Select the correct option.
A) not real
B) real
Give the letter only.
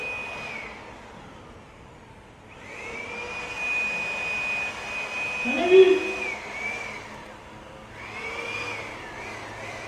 B